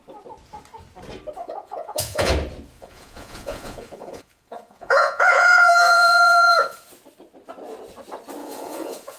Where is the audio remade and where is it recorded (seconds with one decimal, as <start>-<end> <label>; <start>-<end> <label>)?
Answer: 0.0-1.4 recorded; 1.4-2.3 remade; 2.3-2.8 recorded; 2.8-6.9 remade; 6.9-8.4 recorded; 8.4-9.2 remade